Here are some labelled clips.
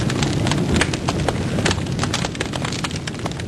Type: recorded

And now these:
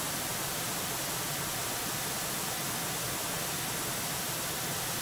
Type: recorded